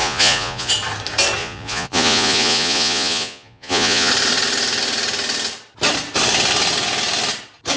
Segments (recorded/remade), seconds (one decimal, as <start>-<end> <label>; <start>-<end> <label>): 0.0-0.7 remade; 0.7-1.4 recorded; 1.4-4.1 remade; 4.1-7.8 recorded